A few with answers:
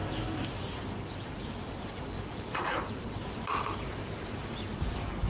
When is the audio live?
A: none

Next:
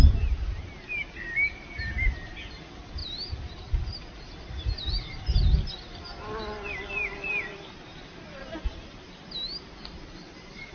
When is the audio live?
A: 0.0-10.7

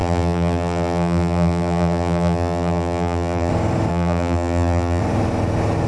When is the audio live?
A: 3.5-3.9; 5.0-5.9

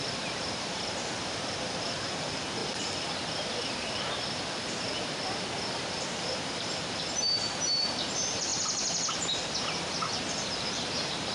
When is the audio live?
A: 2.6-5.8; 8.5-9.1

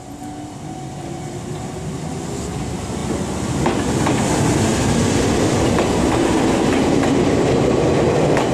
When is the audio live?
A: 0.0-8.5

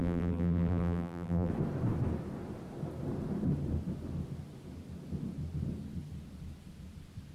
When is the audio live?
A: 1.5-7.3

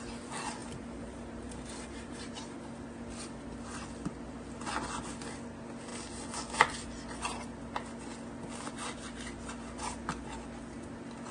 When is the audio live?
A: 0.0-0.6; 2.4-11.3